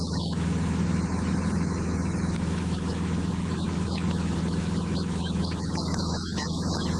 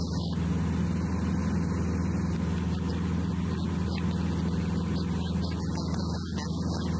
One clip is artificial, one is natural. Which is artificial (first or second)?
first